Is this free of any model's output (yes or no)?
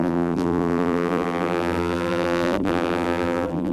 no